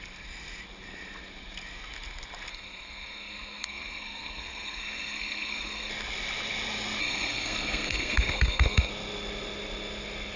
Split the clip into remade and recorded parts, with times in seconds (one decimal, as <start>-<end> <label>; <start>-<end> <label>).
0.0-2.5 recorded; 2.5-5.9 remade; 5.9-7.0 recorded; 7.0-8.9 remade; 8.9-10.4 recorded